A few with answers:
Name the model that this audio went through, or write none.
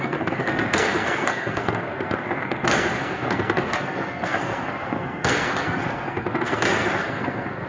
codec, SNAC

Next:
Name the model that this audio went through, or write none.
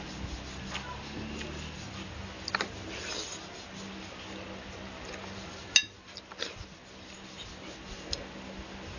none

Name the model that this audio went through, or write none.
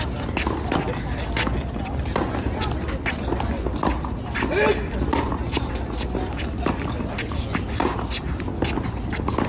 none